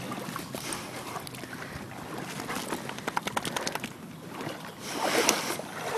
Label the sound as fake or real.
real